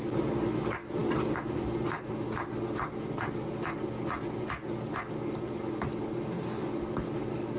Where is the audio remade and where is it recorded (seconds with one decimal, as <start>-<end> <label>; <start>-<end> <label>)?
0.0-7.6 recorded